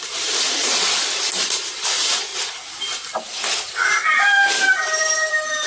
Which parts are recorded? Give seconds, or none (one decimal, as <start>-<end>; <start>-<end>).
2.3-4.5